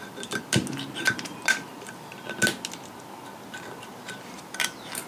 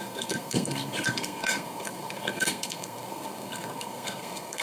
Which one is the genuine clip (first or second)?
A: first